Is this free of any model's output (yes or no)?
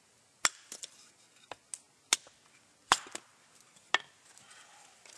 yes